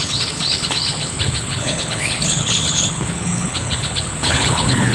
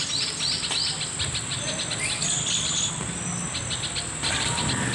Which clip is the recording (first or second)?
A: second